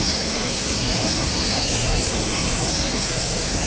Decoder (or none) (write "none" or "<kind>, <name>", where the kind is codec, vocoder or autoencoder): codec, SNAC